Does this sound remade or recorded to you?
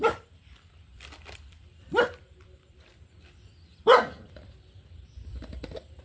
remade